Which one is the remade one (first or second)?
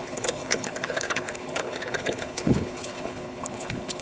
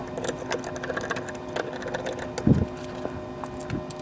first